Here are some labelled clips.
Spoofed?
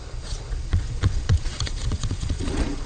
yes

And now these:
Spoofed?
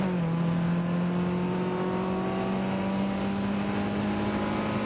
no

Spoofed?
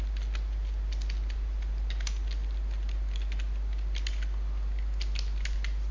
no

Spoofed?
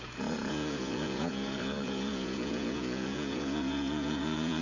yes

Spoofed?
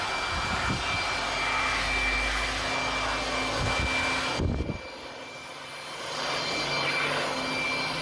no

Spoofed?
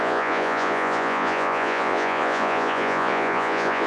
yes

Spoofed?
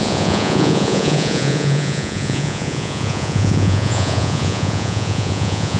yes